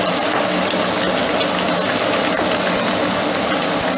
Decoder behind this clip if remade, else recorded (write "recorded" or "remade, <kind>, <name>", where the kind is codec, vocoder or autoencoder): recorded